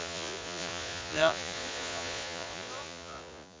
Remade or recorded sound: remade